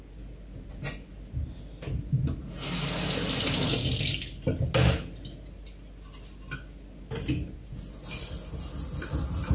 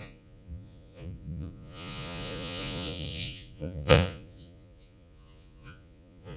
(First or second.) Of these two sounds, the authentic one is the first